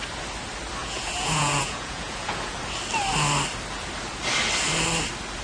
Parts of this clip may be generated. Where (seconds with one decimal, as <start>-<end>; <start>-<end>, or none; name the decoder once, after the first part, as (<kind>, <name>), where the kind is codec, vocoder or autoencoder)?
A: 0.8-2.5 (vocoder, Vocos)